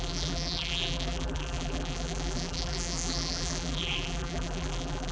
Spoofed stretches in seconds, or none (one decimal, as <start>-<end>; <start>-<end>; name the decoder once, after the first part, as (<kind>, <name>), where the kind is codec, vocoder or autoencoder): 0.0-5.1 (vocoder, BigVGAN v2)